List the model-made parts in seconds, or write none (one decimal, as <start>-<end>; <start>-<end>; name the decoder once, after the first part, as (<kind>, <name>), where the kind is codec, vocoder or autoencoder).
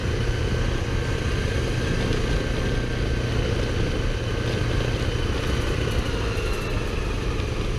none